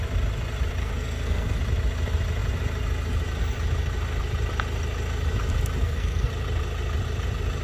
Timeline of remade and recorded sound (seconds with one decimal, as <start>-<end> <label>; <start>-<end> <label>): 0.0-0.8 recorded; 0.8-1.6 remade; 1.6-5.8 recorded; 5.8-6.3 remade; 6.3-7.6 recorded